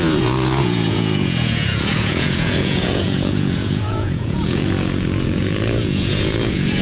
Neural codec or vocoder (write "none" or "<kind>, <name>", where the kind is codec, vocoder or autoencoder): vocoder, Vocos